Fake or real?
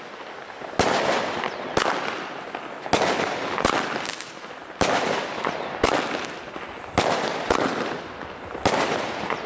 real